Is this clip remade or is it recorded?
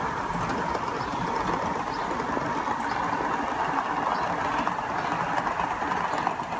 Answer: recorded